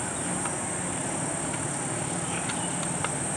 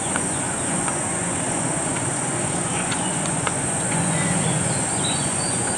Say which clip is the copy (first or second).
second